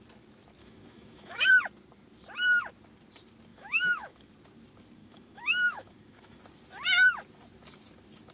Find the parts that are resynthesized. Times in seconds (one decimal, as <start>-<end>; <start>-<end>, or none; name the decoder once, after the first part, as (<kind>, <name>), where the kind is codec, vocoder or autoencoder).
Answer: 0.6-1.5 (autoencoder, DAC-VAE); 3.5-4.3; 5.0-6.4